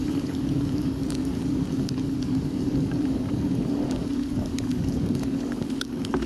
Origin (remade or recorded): remade